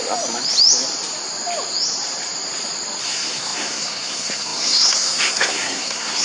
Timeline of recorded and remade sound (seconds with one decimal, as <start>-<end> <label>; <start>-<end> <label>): 0.0-3.0 recorded; 3.0-6.2 remade